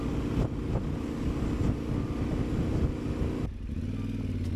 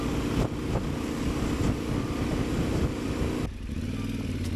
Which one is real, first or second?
first